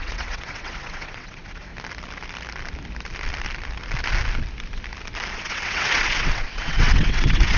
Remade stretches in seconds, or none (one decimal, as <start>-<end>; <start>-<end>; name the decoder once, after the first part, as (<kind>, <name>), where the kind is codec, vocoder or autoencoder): 0.0-1.7 (vocoder, WaveNeXt); 5.3-7.6